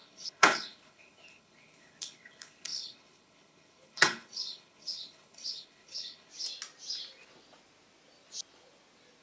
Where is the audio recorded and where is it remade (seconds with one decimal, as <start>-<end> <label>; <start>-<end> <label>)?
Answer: 0.0-6.3 remade; 6.3-9.2 recorded